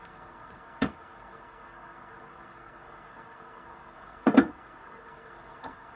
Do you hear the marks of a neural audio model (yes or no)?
yes